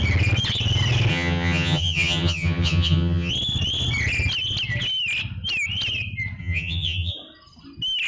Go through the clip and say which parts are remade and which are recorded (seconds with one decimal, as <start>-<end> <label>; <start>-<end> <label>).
0.0-1.1 recorded; 1.1-3.3 remade; 3.3-6.4 recorded; 6.4-7.1 remade; 7.1-8.1 recorded